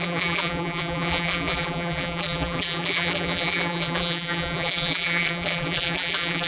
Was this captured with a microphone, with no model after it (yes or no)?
no